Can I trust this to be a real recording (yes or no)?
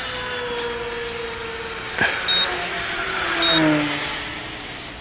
yes